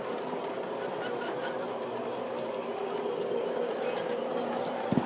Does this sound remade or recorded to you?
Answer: recorded